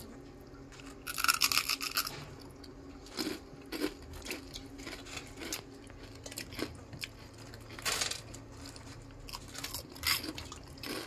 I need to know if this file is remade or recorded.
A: recorded